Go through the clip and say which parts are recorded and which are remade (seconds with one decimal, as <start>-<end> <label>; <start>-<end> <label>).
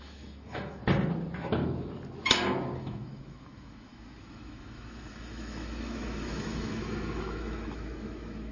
0.0-0.8 remade; 0.8-2.8 recorded; 2.8-8.5 remade